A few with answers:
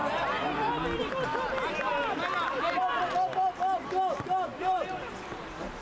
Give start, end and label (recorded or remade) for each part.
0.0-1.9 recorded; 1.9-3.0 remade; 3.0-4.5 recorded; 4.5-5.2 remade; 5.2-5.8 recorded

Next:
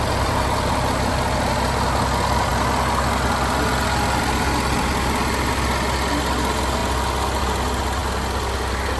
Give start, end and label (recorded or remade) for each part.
0.0-9.0 recorded